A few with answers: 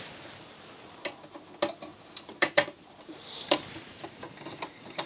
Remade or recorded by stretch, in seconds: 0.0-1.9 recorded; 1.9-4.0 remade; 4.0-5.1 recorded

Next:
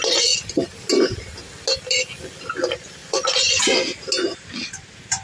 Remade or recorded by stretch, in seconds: 0.0-3.0 recorded; 3.0-3.6 remade; 3.6-5.2 recorded

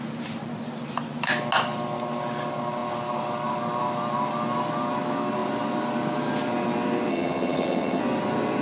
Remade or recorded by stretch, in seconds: 0.0-7.1 recorded; 7.1-8.0 remade; 8.0-8.6 recorded

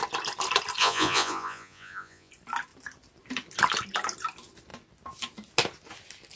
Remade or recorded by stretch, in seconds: 0.0-0.8 recorded; 0.8-2.3 remade; 2.3-6.4 recorded